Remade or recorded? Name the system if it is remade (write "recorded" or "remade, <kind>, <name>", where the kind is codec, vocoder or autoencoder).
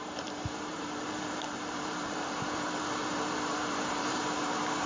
remade, vocoder, BigVGAN v2